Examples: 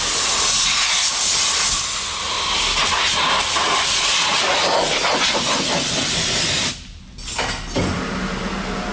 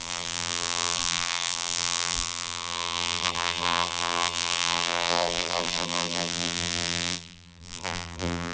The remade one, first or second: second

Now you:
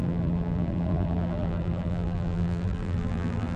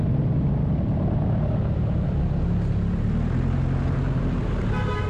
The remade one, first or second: first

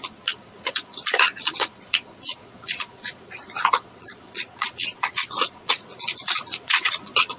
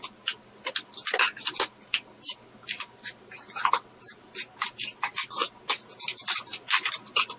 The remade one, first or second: first